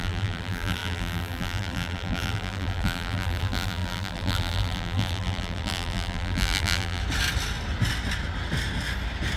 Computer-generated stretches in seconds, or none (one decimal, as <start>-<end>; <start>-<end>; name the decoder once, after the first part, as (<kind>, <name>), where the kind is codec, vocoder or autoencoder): 0.0-7.0 (vocoder, BigVGAN v2)